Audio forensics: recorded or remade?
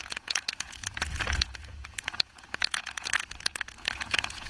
remade